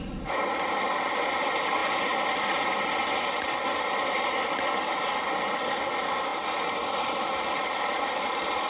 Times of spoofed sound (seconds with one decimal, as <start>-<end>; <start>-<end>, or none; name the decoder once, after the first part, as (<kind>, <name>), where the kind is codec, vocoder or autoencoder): none